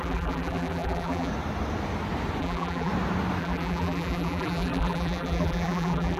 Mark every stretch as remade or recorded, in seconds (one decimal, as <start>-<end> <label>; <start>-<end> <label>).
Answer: 0.0-1.3 remade; 1.3-2.4 recorded; 2.4-2.9 remade; 2.9-3.4 recorded; 3.4-6.2 remade